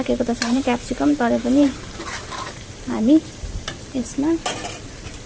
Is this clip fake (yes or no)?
yes